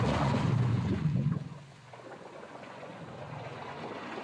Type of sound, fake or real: fake